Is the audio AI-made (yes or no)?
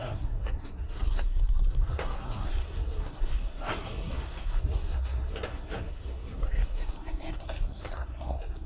yes